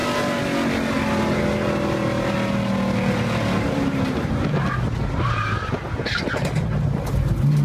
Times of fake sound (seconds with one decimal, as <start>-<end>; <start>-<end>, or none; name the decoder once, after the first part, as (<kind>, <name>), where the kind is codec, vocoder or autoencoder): none